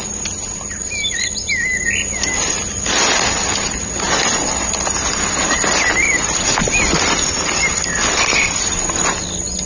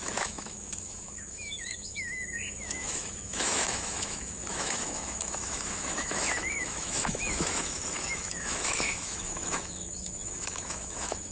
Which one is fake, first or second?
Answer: second